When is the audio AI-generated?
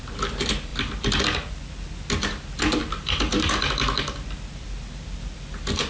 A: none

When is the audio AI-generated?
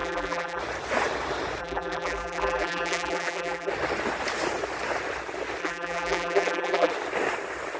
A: 0.0-0.6 (vocoder, BigVGAN v2); 1.6-3.7; 5.6-6.9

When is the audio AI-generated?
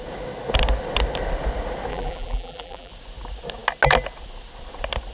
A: 1.9-2.9 (vocoder, BigVGAN v2)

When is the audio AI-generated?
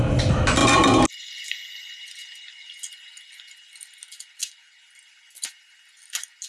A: none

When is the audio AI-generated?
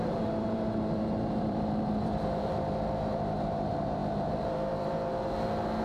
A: 0.0-5.8 (vocoder, BigVGAN v2)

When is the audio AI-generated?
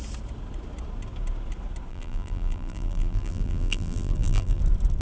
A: 1.9-4.6 (vocoder, BigVGAN v2)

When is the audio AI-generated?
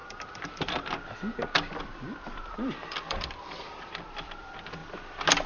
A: 0.0-4.8 (vocoder, BigVGAN v2)